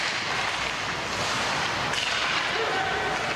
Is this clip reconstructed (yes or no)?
no